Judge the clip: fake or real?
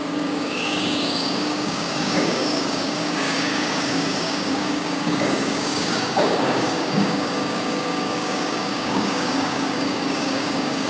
fake